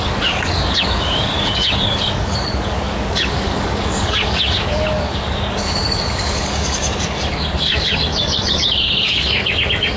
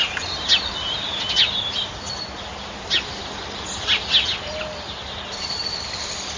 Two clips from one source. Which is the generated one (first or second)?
first